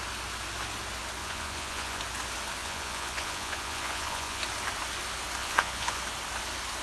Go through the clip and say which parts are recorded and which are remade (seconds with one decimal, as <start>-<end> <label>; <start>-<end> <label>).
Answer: 0.0-1.2 recorded; 1.2-2.0 remade; 2.0-2.6 recorded; 2.6-4.4 remade; 4.4-5.4 recorded; 5.4-6.0 remade; 6.0-6.8 recorded